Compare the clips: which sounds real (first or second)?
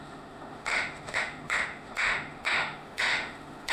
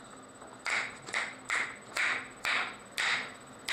second